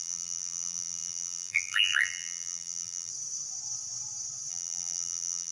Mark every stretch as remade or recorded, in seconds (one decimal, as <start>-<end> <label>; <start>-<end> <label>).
0.0-3.1 remade; 3.1-4.5 recorded; 4.5-5.5 remade